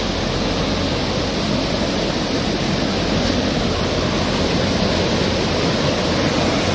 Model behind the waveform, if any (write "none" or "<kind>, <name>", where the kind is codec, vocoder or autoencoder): none